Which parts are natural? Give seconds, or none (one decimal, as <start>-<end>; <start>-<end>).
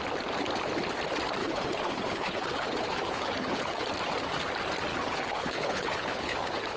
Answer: 0.0-1.4; 3.9-4.9